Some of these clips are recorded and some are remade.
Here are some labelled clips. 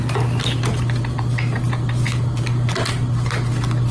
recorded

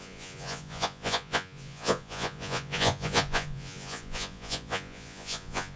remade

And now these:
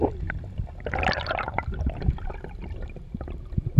recorded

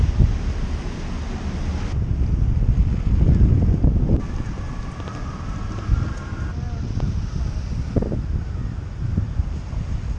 recorded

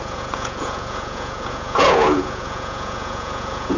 remade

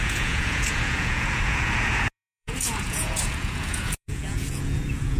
remade